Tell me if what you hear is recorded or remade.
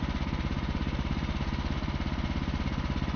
recorded